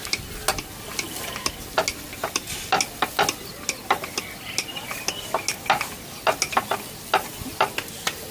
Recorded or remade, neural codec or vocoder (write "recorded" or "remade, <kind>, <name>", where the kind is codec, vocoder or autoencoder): recorded